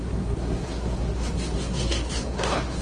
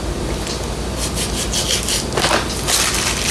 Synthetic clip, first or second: first